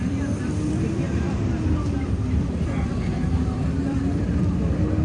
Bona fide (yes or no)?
no